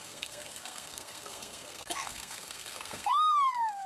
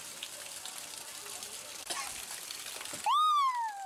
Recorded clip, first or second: second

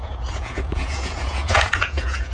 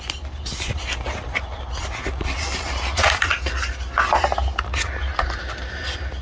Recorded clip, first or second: second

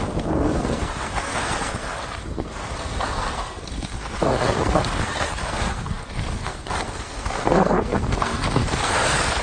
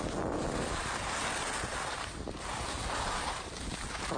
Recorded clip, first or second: second